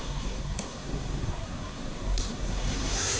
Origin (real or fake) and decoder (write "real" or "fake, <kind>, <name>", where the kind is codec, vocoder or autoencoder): fake, codec, SNAC